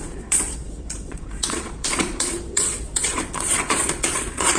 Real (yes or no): no